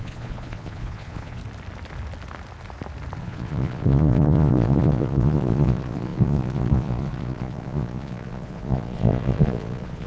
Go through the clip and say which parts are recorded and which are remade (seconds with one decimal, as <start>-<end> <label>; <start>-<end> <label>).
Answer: 0.0-1.4 remade; 1.4-3.2 recorded; 3.2-10.1 remade